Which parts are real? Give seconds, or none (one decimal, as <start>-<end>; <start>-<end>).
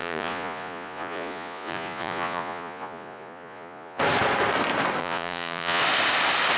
4.0-5.0; 5.8-6.6